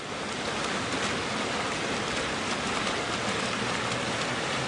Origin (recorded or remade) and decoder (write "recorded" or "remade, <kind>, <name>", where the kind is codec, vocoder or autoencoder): recorded